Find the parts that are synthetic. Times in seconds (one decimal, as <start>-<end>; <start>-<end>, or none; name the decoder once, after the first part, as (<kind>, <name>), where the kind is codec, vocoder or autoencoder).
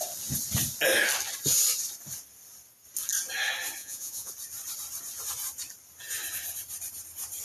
3.8-4.3 (vocoder, Vocos)